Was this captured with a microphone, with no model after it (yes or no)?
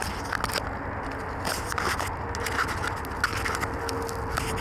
yes